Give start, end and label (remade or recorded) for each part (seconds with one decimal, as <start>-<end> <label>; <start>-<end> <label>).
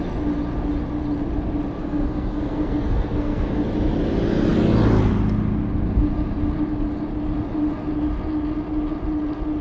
0.0-1.8 recorded; 1.8-3.5 remade; 3.5-9.6 recorded